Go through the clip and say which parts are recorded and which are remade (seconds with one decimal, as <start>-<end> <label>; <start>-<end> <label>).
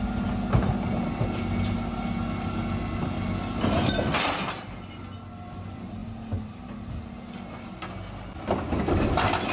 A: 0.0-9.5 recorded